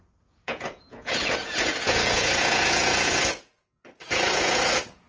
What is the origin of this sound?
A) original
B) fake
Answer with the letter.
B